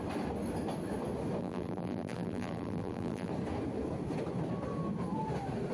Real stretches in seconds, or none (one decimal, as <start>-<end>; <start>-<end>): 0.0-1.4; 3.3-5.7